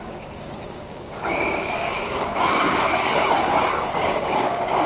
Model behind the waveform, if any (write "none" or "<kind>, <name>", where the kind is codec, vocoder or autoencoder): codec, DAC